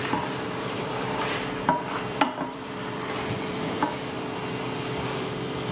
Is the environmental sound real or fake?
fake